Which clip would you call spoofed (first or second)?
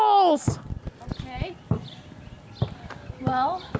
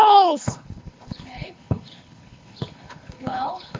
second